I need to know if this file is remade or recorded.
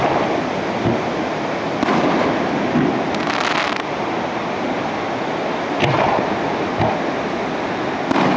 recorded